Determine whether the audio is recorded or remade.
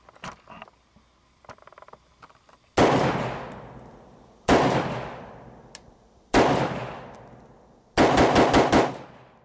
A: recorded